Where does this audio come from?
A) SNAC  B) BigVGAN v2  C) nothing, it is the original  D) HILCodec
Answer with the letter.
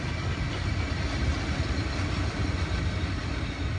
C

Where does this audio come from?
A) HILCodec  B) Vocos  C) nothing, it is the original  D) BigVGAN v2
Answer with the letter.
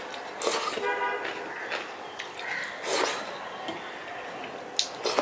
C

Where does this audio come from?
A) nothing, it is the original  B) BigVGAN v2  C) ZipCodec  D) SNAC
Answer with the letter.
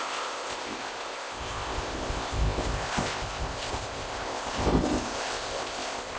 C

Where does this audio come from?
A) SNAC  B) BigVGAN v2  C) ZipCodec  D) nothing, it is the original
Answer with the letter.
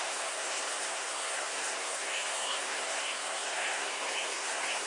A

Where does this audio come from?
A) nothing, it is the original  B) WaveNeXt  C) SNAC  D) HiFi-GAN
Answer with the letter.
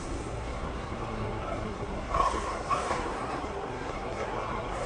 C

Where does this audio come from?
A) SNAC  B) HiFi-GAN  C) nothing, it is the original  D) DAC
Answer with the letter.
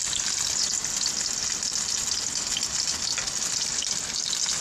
C